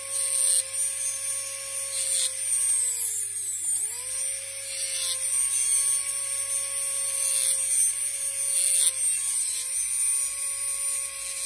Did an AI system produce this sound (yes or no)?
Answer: no